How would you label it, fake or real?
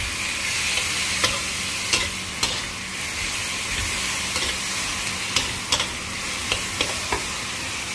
real